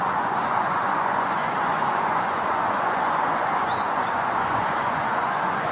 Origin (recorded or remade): remade